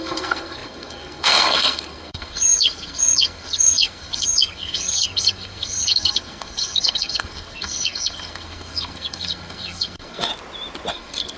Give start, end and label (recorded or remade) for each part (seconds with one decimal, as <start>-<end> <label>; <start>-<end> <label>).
0.0-10.3 remade; 10.3-10.9 recorded; 10.9-11.4 remade